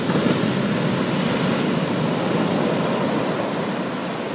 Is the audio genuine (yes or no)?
yes